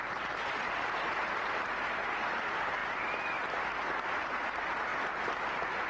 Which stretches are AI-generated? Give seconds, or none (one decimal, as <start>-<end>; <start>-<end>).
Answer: none